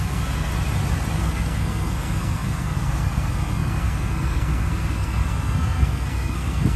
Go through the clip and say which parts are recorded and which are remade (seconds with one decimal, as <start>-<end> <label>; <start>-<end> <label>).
0.0-0.5 remade; 0.5-1.2 recorded; 1.2-6.8 remade